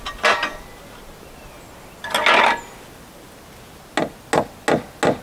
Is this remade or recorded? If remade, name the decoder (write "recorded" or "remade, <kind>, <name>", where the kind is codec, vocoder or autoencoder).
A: recorded